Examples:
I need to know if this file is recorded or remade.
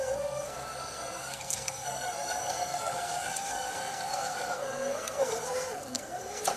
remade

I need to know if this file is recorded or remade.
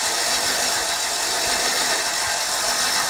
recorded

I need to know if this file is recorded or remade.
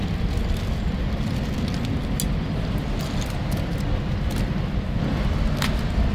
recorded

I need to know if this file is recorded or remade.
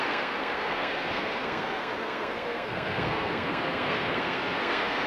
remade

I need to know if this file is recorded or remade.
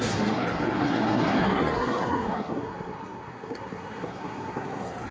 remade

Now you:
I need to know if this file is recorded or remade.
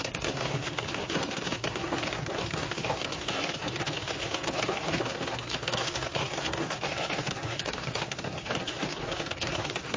remade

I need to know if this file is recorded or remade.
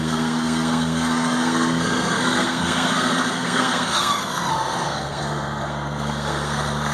remade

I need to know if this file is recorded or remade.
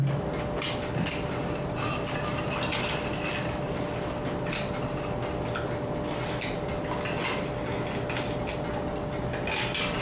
recorded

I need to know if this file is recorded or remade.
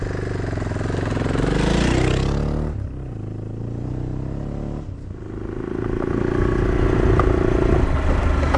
recorded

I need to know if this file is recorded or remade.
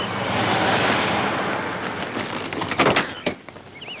recorded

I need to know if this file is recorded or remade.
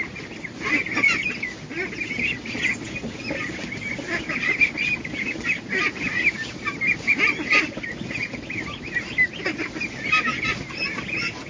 recorded